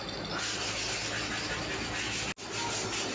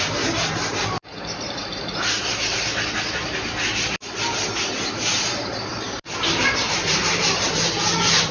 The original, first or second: first